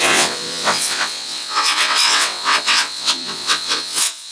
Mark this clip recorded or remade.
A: remade